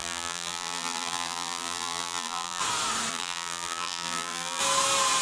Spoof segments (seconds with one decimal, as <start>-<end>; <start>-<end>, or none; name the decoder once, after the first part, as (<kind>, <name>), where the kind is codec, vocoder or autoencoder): 0.0-2.6 (vocoder, BigVGAN v2); 3.1-4.6